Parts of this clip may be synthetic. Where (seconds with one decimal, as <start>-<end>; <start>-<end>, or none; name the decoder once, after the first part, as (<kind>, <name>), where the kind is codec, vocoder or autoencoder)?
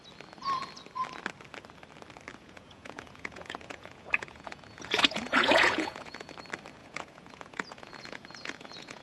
2.3-6.3 (vocoder, Vocos); 6.8-9.0